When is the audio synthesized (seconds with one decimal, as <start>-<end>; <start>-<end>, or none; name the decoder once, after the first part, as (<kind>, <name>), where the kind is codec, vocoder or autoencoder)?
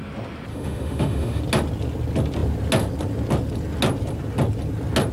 0.5-1.4 (autoencoder, DAC-VAE)